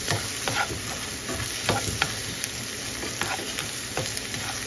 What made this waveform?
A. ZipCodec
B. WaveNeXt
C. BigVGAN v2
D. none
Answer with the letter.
D